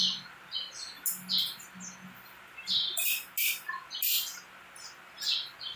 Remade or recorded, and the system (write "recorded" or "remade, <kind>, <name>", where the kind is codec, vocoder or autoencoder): recorded